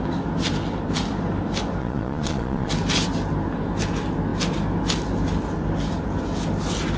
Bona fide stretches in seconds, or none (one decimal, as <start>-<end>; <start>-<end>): 0.0-1.8; 2.7-7.0